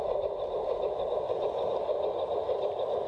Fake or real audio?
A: real